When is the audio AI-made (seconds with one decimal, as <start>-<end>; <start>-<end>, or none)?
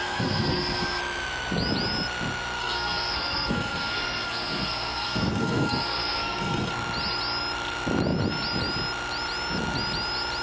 0.0-1.0; 2.6-6.7